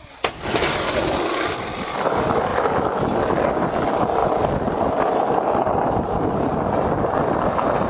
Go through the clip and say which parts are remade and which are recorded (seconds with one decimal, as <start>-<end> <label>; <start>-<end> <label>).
0.0-7.9 recorded